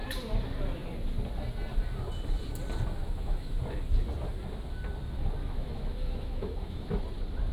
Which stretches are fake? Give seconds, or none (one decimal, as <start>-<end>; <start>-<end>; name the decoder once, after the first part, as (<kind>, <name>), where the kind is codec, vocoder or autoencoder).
3.0-3.6 (autoencoder, DAC-VAE); 5.4-7.0